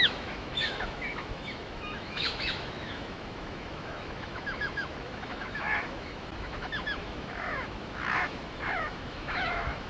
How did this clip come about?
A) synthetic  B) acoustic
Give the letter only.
A